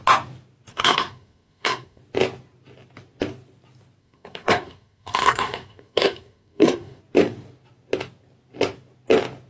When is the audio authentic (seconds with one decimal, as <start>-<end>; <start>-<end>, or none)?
0.0-0.7; 2.0-4.0; 7.0-9.5